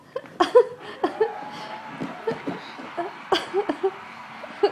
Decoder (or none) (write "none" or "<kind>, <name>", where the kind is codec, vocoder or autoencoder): none